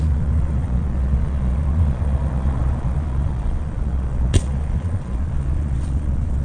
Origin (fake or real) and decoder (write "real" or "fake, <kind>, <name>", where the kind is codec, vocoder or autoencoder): fake, vocoder, Vocos